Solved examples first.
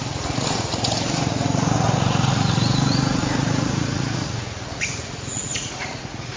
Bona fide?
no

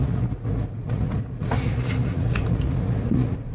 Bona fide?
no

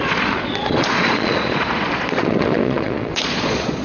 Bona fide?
no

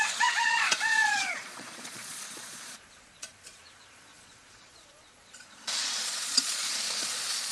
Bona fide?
no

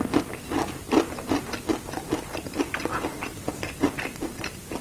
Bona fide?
yes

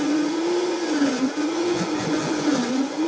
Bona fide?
no